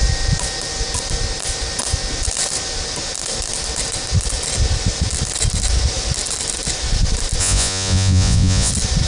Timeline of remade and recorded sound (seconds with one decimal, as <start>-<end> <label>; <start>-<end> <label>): 0.0-7.4 recorded; 7.4-8.7 remade; 8.7-9.1 recorded